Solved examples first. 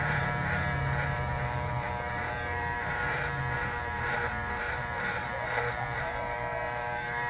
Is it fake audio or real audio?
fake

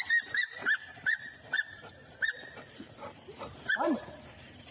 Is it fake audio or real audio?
fake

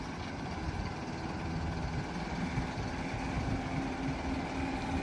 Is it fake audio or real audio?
real